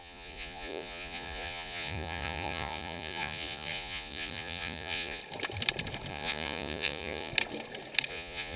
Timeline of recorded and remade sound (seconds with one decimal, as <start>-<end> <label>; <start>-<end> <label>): 0.0-5.2 remade; 5.2-6.1 recorded; 6.1-7.3 remade; 7.3-8.1 recorded; 8.1-8.6 remade